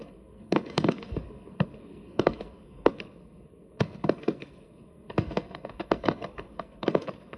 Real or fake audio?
fake